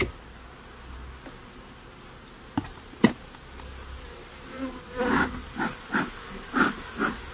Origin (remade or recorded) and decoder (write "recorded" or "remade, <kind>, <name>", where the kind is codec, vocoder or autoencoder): recorded